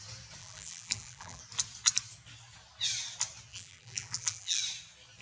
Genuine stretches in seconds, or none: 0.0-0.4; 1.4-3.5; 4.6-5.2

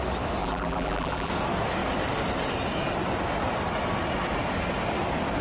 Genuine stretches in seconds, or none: 0.0-0.4; 1.3-5.4

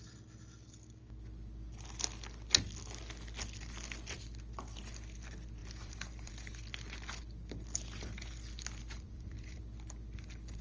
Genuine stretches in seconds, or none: 0.0-5.6; 6.3-8.8; 9.6-10.6

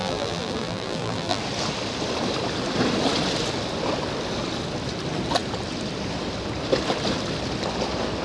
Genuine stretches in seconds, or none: 1.4-8.2

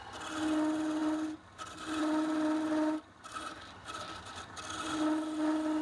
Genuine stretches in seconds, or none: 0.0-5.8